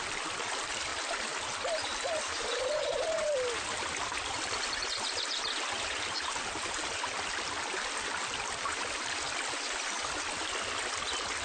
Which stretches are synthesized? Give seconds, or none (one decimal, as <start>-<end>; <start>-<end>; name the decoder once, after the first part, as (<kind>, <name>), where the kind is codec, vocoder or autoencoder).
2.6-3.3 (vocoder, Vocos)